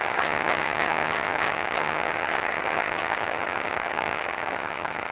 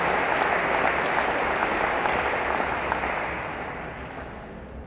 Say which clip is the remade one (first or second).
first